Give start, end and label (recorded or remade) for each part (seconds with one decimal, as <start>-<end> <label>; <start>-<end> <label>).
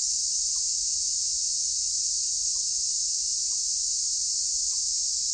0.0-2.4 recorded; 2.4-4.3 remade; 4.3-5.3 recorded